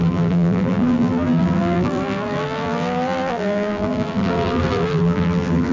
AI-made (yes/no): yes